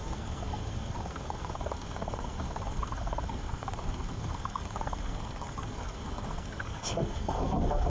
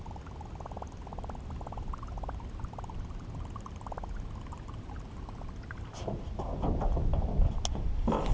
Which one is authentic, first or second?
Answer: second